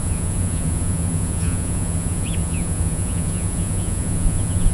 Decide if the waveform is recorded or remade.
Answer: remade